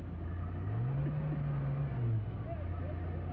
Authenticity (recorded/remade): recorded